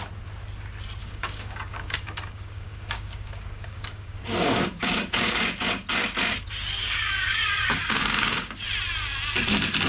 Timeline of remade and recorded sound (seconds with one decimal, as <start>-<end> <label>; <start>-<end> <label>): 0.0-1.0 recorded; 1.0-5.4 remade; 5.4-6.8 recorded; 6.8-8.6 remade; 8.6-9.9 recorded